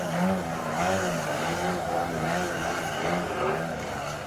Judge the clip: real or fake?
fake